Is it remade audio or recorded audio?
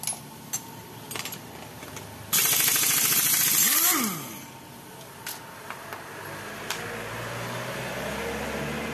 recorded